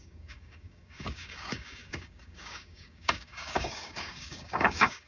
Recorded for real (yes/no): no